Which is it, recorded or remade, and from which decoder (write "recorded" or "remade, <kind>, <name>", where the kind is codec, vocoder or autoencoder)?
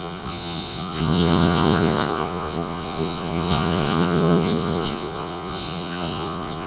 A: remade, vocoder, Vocos